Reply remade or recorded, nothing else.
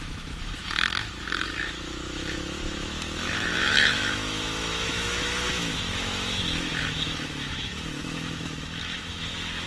remade